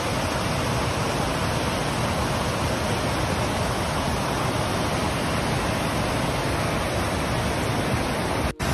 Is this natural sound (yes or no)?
yes